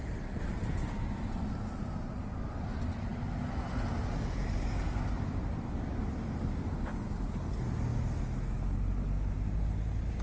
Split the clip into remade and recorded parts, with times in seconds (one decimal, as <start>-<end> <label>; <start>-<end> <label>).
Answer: 0.0-7.9 recorded; 7.9-8.8 remade; 8.8-10.2 recorded